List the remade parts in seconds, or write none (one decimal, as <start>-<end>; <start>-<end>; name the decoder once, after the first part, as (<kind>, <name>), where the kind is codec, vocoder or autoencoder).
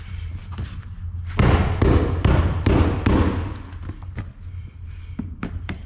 0.0-0.4 (vocoder, BigVGAN v2); 3.9-5.9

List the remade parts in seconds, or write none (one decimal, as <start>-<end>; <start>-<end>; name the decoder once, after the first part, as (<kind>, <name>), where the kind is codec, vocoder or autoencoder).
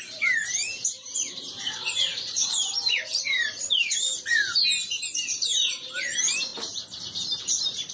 0.0-6.5 (vocoder, BigVGAN v2); 7.4-7.9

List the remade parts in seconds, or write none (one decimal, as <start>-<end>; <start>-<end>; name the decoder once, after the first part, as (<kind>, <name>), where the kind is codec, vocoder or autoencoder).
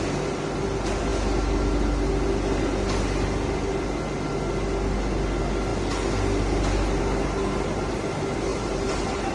8.5-9.3 (vocoder, BigVGAN v2)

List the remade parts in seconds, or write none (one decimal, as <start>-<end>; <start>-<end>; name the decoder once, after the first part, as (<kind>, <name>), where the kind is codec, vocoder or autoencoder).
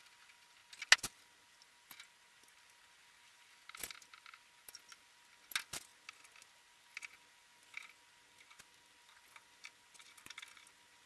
none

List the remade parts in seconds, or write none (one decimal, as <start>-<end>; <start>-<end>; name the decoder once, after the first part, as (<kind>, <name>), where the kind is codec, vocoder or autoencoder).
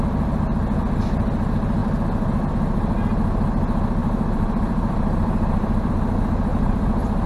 4.0-5.9 (vocoder, BigVGAN v2); 6.5-7.3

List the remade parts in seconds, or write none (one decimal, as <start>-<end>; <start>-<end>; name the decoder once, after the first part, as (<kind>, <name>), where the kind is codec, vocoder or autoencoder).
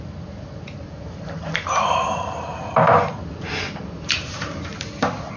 0.8-2.7 (vocoder, BigVGAN v2); 3.8-4.8